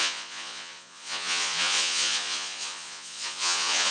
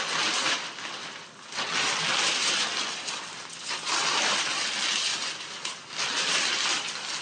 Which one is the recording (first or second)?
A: second